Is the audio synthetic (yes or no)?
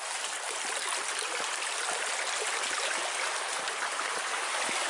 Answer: no